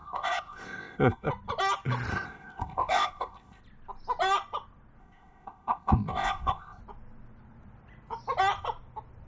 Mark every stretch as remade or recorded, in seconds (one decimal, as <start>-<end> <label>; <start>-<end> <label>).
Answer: 0.0-1.3 remade; 1.3-2.1 recorded; 2.1-3.6 remade; 3.6-5.0 recorded; 5.0-6.8 remade; 6.8-9.3 recorded